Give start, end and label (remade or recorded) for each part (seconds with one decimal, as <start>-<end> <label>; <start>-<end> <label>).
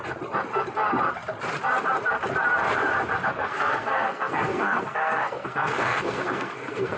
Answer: 0.0-3.4 recorded; 3.4-7.0 remade